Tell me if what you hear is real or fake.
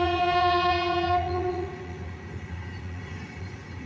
fake